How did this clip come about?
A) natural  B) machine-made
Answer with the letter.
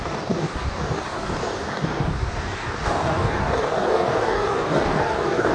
B